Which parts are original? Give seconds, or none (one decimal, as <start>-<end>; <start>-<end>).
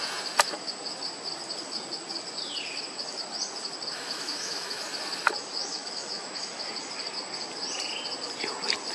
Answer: 0.0-3.9; 4.8-5.6; 6.7-8.9